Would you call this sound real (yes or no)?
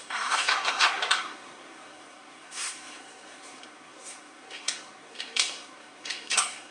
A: no